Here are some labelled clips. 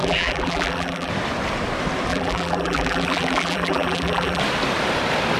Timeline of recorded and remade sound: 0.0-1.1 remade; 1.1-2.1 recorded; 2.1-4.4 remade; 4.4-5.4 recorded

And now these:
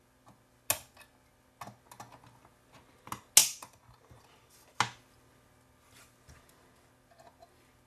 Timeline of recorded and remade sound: 0.0-3.4 recorded; 3.4-4.8 remade; 4.8-7.9 recorded

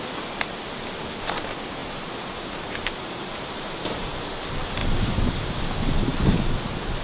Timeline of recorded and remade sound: 0.0-1.8 recorded; 1.8-4.3 remade; 4.3-4.8 recorded; 4.8-5.3 remade; 5.3-7.0 recorded